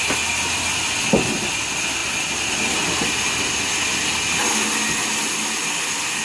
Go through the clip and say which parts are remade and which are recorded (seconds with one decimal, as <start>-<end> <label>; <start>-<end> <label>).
0.0-6.2 recorded